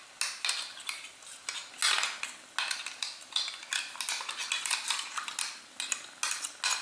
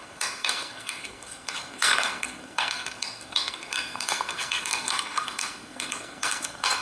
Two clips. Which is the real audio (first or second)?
first